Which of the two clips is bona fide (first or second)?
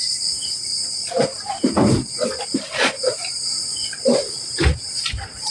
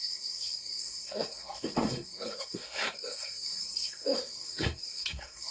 first